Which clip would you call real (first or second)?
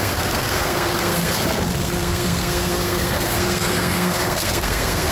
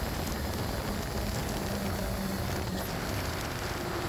second